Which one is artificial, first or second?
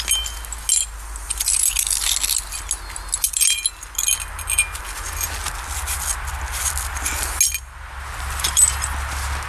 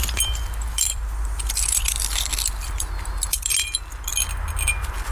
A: second